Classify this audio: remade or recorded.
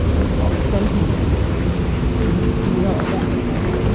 recorded